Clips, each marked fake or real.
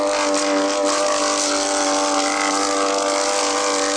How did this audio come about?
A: real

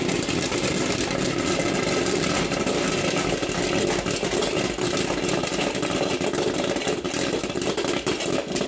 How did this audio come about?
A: real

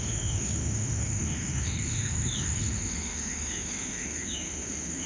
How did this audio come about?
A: fake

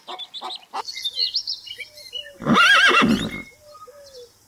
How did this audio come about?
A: real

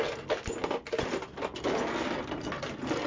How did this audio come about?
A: real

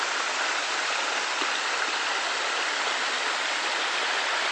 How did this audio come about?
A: real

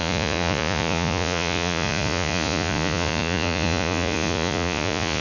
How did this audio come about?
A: fake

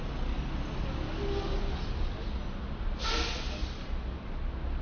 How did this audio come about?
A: real